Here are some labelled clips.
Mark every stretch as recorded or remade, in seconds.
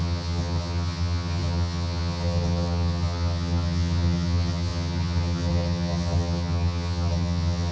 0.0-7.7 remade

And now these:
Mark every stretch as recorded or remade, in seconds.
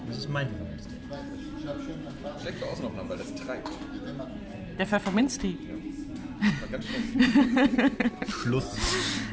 0.0-9.3 recorded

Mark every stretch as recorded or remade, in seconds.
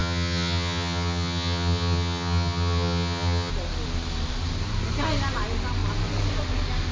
0.0-3.5 remade; 3.5-6.9 recorded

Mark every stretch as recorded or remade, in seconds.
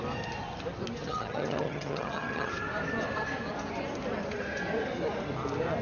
0.0-1.0 recorded; 1.0-2.5 remade; 2.5-5.8 recorded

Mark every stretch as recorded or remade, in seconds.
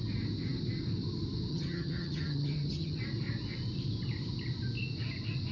0.0-1.5 recorded; 1.5-3.0 remade; 3.0-5.5 recorded